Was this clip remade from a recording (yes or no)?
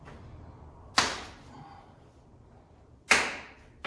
no